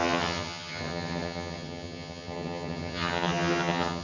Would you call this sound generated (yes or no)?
yes